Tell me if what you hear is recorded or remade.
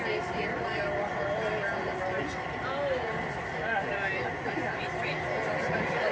recorded